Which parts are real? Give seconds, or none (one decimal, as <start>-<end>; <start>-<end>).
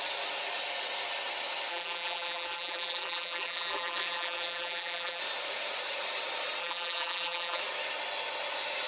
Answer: 0.0-1.7; 5.2-6.6; 7.6-8.9